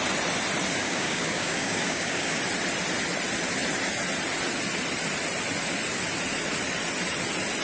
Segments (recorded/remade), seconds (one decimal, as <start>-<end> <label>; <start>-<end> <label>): 0.0-0.8 recorded; 0.8-2.4 remade; 2.4-7.6 recorded